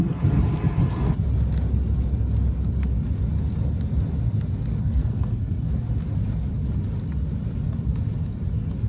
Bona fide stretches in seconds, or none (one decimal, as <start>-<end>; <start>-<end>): 0.0-4.7; 5.7-8.9